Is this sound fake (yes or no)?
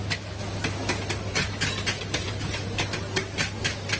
no